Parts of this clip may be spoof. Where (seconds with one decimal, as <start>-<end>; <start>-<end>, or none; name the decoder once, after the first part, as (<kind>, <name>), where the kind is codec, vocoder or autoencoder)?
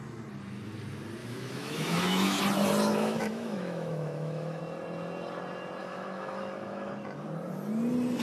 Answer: 1.2-2.4 (autoencoder, DAC-VAE); 2.9-4.6; 5.8-6.9